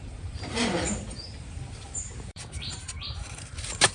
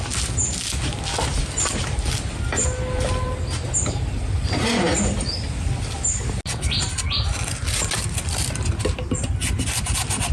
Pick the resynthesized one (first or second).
first